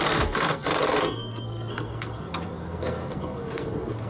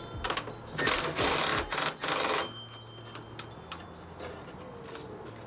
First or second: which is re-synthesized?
first